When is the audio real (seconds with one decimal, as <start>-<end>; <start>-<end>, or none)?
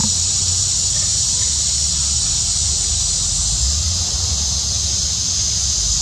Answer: 0.5-1.1; 2.7-6.0